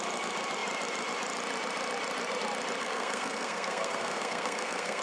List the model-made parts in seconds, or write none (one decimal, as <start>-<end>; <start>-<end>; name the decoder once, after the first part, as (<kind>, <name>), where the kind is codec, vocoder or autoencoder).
2.8-5.0 (codec, SNAC)